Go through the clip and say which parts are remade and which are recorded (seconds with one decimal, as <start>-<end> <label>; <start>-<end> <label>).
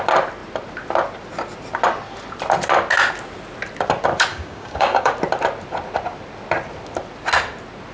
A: 0.0-4.3 recorded; 4.3-5.1 remade; 5.1-7.9 recorded